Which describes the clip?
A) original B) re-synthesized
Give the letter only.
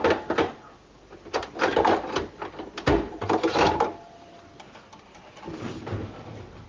A